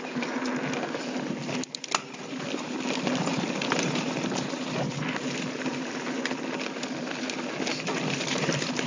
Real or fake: real